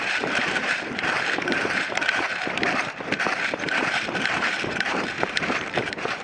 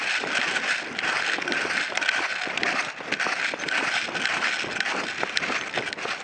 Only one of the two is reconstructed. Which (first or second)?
first